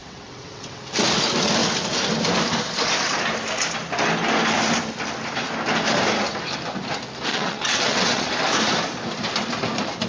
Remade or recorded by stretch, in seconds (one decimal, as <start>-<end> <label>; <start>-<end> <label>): 0.0-0.8 remade; 0.8-7.3 recorded; 7.3-8.3 remade; 8.3-10.1 recorded